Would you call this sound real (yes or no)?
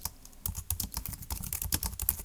yes